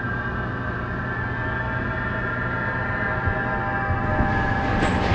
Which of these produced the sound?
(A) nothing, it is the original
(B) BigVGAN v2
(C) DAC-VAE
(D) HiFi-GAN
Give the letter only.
A